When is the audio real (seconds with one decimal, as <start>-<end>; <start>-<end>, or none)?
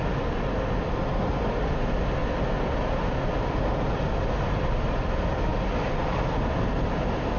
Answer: 0.0-7.4